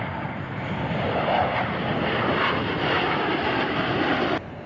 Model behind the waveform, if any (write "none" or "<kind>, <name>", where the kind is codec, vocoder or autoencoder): none